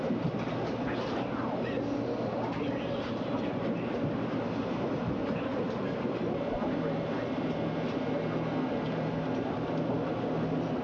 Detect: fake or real fake